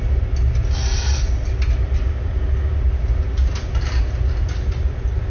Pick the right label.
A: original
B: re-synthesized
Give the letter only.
A